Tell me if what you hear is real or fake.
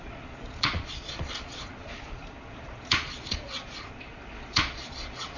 fake